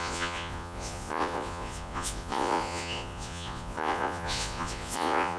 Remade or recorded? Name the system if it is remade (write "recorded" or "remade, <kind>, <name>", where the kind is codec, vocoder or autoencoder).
remade, vocoder, Vocos